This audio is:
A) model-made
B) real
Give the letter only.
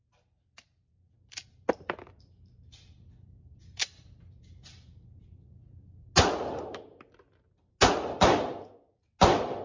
B